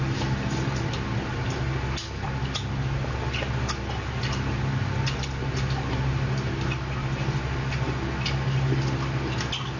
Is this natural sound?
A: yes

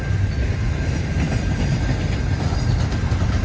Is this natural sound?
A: yes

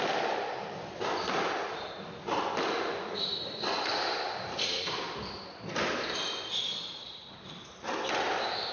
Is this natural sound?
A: yes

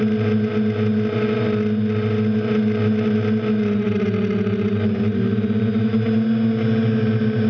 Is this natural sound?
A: yes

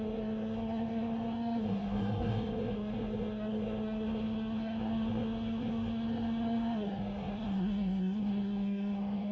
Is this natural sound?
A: no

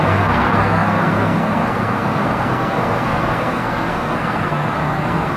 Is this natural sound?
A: no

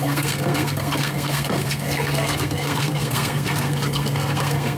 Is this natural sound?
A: no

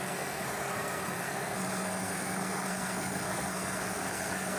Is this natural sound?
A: no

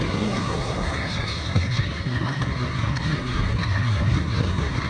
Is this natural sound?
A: no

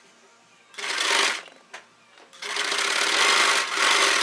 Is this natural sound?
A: yes